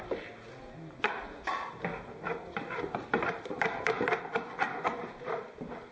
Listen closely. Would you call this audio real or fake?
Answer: real